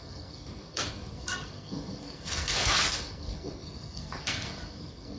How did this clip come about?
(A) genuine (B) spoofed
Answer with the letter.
B